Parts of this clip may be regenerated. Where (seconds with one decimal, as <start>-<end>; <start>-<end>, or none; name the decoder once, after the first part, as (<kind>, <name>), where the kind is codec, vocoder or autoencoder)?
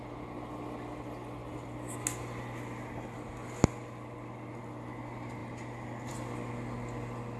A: none